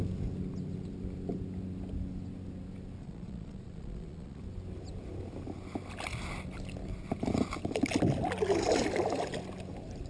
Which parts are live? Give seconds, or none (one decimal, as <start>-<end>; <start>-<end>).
0.0-3.0; 4.4-10.1